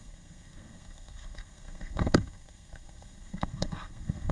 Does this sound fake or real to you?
fake